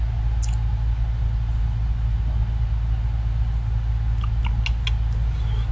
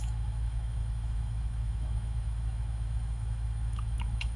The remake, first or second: second